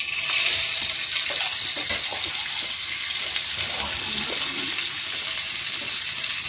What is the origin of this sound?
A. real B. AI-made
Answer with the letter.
A